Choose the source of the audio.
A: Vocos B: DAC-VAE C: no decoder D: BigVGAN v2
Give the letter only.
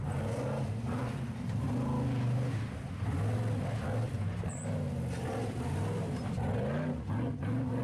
C